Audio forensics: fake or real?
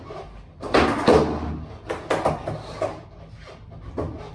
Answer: real